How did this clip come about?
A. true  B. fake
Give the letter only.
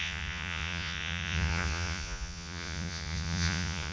B